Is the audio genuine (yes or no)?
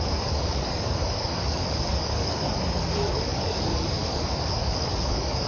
no